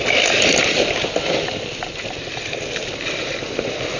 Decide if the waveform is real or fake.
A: real